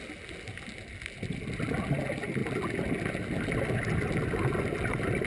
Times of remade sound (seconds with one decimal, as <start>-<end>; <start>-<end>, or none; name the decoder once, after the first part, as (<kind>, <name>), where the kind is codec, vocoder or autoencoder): none